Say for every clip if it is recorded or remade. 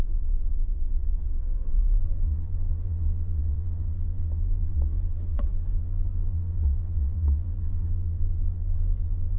remade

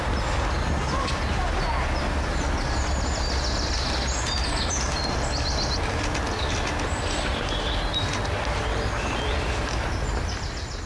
recorded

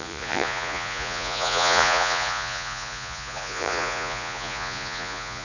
remade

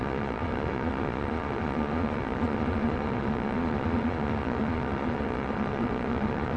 remade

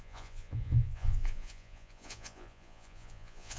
remade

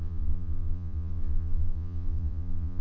remade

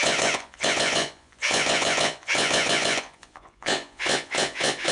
remade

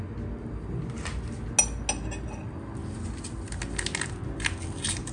recorded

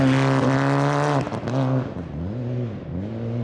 recorded